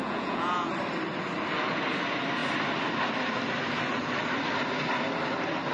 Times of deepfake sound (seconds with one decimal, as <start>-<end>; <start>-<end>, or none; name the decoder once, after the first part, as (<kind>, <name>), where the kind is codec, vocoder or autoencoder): 0.0-0.7 (vocoder, Vocos)